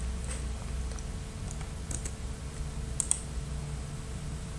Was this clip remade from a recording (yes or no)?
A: no